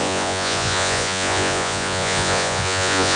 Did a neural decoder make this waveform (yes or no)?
yes